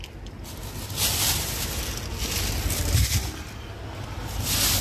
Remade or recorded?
recorded